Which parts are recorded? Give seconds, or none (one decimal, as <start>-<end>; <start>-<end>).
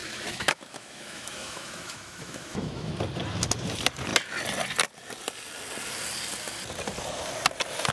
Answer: 2.9-7.9